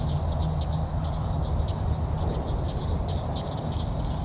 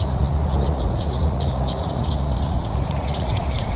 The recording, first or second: first